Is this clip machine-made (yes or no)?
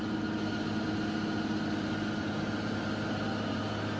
no